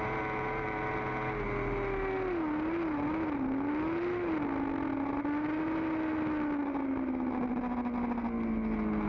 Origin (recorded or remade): recorded